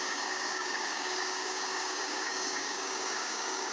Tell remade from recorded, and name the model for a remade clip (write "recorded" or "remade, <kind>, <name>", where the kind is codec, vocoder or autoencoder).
remade, codec, DAC